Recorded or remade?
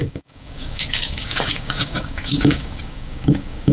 remade